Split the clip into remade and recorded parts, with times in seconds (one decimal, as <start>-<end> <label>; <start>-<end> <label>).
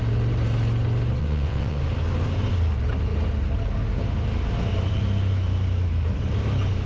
0.0-1.2 recorded; 1.2-1.8 remade; 1.8-6.9 recorded